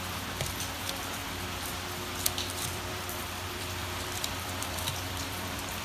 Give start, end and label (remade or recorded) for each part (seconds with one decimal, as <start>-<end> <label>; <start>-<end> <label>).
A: 0.0-1.2 remade; 1.2-2.5 recorded; 2.5-5.8 remade